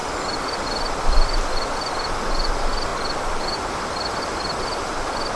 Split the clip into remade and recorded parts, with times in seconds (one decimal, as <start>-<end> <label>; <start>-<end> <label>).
0.0-5.4 recorded